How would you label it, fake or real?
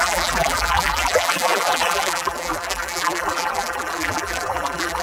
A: fake